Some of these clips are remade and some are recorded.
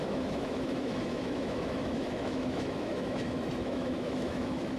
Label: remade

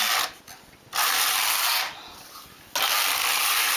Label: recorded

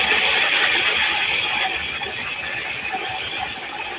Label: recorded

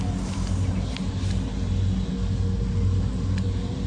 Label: recorded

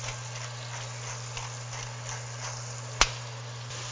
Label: recorded